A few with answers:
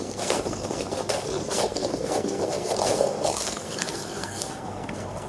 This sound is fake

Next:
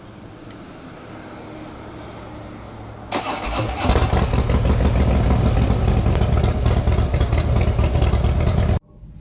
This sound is real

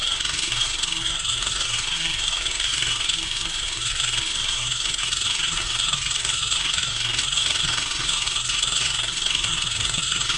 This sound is fake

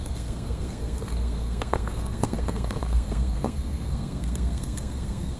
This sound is fake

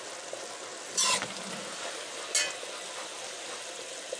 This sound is real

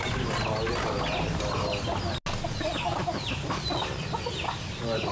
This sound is real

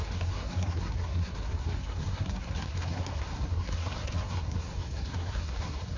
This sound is fake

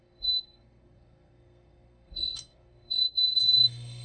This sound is fake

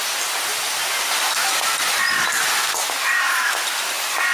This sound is real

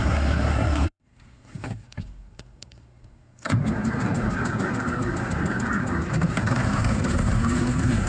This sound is fake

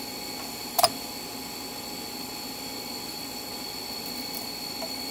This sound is real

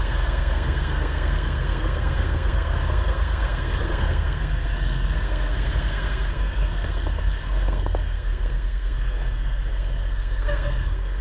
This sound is fake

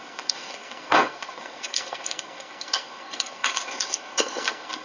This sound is fake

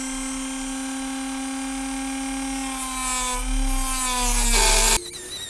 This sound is real